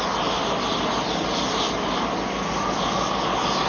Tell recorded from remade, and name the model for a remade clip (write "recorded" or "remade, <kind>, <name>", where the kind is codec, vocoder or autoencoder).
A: recorded